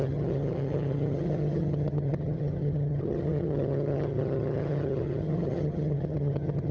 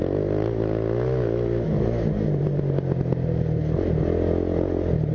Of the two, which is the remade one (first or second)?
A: first